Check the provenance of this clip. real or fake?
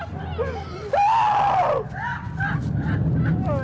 real